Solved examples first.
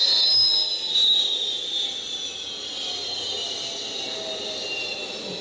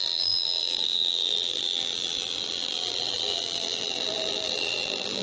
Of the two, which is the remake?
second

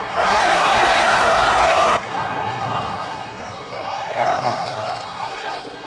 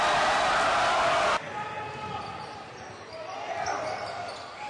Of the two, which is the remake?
first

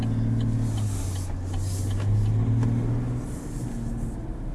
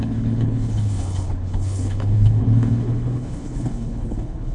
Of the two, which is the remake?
second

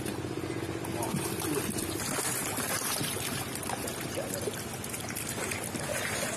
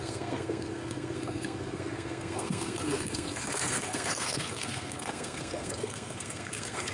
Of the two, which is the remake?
second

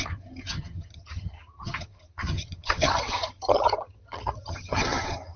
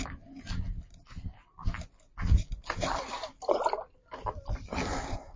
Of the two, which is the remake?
first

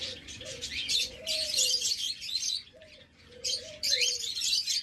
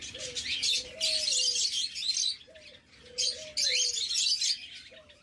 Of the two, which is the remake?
first